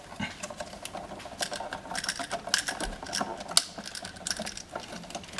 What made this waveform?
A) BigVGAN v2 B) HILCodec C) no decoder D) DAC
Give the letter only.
C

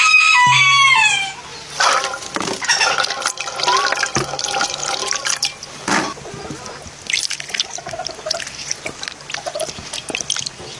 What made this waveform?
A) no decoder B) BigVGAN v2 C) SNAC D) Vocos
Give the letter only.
A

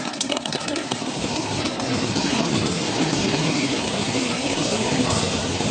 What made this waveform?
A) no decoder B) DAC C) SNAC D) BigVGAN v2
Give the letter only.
C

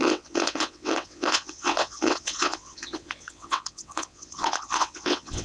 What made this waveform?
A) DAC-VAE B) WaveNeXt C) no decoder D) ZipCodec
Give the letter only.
B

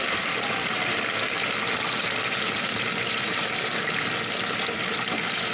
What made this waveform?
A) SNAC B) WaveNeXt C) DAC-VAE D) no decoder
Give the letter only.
D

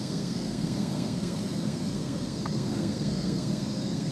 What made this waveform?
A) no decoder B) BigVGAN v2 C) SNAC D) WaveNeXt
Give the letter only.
C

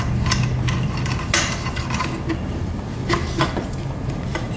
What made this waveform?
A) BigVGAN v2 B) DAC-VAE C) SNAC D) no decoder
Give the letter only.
A